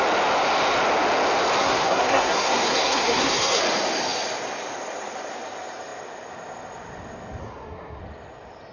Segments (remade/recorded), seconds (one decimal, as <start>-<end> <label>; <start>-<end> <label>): 0.0-1.6 recorded; 1.6-3.6 remade; 3.6-7.4 recorded; 7.4-8.0 remade; 8.0-8.7 recorded